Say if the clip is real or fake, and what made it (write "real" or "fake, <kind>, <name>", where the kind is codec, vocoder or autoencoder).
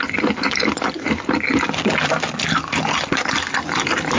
real